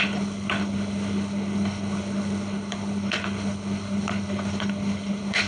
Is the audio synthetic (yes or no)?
yes